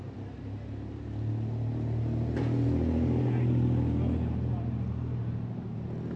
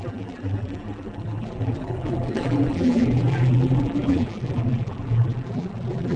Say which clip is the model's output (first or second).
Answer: second